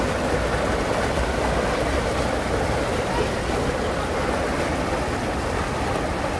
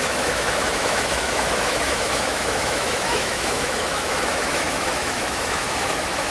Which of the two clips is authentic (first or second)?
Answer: first